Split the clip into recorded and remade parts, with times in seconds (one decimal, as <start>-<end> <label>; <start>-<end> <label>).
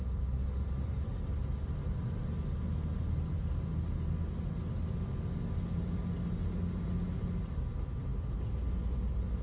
0.0-9.4 recorded